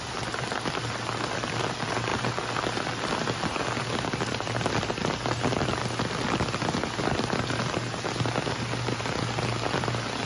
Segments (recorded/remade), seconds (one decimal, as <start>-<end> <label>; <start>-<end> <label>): 0.0-10.3 recorded